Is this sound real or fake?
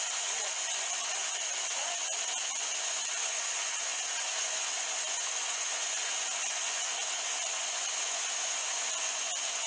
fake